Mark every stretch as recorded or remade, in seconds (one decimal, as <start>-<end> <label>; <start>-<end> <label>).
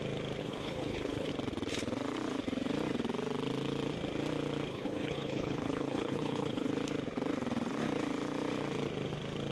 0.0-0.4 recorded; 0.4-1.3 remade; 1.3-4.7 recorded; 4.7-6.7 remade; 6.7-9.5 recorded